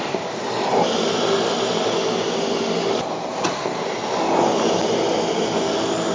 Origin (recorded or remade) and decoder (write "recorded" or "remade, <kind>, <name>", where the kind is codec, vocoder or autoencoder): recorded